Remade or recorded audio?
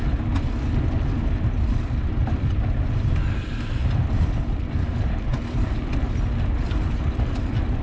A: recorded